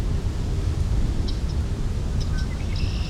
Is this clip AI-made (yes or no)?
no